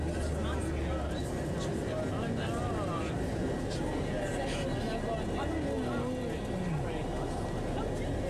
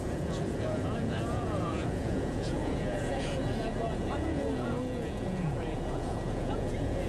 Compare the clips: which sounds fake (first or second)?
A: second